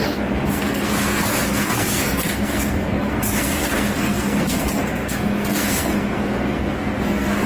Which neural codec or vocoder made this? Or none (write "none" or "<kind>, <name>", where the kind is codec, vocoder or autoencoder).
codec, SNAC